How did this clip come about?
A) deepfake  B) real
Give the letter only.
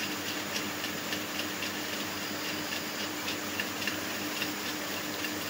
B